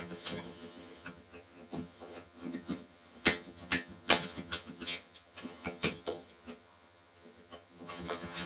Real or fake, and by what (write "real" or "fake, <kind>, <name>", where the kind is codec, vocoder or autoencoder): fake, vocoder, HiFi-GAN